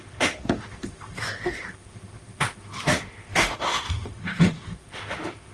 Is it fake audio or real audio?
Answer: fake